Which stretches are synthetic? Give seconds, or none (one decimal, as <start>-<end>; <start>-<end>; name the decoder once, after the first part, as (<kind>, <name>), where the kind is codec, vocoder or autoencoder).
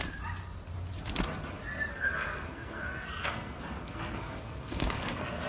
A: 1.9-5.5 (codec, SNAC)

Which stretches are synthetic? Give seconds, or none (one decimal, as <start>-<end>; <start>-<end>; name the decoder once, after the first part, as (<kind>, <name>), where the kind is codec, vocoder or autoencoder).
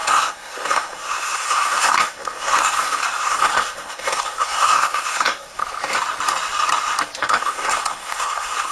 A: 0.0-5.6 (codec, SNAC); 7.2-8.7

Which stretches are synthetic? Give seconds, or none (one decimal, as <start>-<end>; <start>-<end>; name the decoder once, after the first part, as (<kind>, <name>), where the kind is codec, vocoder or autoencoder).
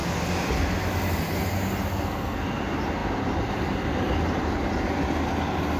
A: 1.9-2.4 (codec, SNAC)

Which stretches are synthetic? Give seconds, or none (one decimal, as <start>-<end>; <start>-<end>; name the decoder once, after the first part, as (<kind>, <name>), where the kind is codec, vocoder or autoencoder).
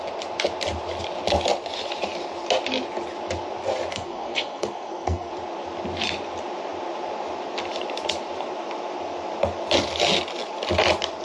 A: 3.9-5.3 (codec, SNAC)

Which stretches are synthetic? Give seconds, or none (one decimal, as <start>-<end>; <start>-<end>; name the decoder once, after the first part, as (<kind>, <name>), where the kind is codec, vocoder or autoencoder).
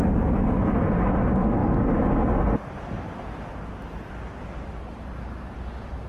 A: none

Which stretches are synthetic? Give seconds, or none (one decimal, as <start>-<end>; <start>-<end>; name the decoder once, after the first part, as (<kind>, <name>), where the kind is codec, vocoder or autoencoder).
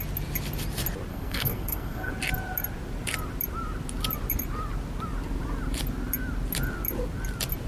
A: 1.1-2.1 (codec, SNAC)